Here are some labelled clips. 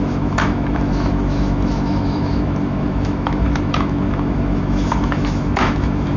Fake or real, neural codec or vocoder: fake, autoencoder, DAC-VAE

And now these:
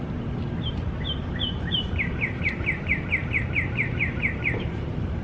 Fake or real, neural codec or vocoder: fake, vocoder, BigVGAN v2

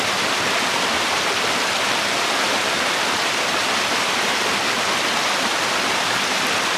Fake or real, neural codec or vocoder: real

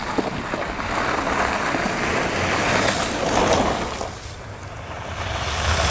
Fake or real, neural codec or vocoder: real